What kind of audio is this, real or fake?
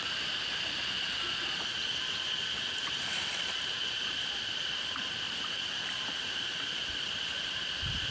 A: real